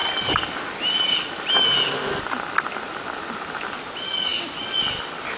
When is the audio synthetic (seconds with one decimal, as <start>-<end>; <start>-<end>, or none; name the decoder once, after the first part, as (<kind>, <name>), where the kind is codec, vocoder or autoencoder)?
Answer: none